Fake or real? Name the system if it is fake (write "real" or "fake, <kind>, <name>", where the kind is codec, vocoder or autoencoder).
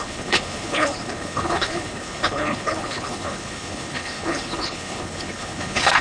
fake, codec, HILCodec